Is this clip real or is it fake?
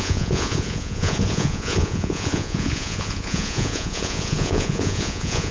fake